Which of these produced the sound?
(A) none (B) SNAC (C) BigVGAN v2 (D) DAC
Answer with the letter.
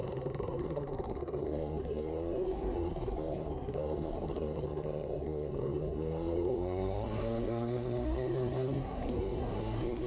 B